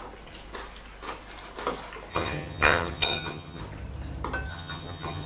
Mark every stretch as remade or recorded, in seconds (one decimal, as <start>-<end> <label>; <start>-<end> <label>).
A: 0.0-2.1 recorded; 2.1-3.6 remade; 3.6-4.5 recorded; 4.5-5.3 remade